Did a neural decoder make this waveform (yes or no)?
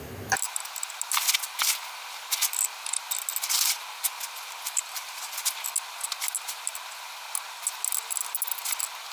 no